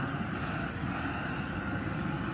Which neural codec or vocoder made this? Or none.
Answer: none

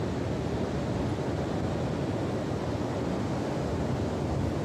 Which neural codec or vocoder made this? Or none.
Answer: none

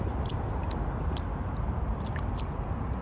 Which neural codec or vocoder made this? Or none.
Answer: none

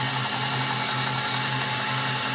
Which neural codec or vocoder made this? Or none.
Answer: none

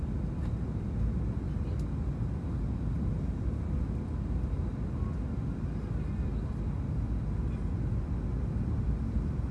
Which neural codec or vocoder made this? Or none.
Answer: none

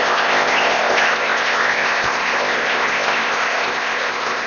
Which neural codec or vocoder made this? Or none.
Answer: codec, ZipCodec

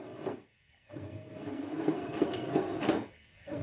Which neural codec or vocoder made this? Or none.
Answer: codec, SNAC